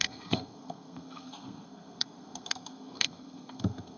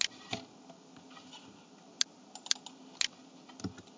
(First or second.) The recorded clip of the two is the second